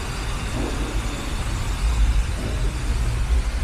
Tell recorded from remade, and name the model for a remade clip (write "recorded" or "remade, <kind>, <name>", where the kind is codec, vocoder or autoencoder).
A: recorded